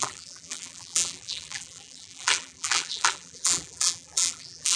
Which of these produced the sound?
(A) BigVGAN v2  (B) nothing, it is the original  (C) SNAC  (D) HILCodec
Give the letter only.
A